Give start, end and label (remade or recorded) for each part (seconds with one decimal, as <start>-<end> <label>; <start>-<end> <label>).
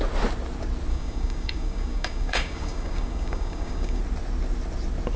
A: 0.0-0.9 recorded; 0.9-4.0 remade; 4.0-5.2 recorded